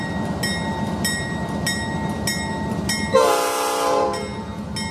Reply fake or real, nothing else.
real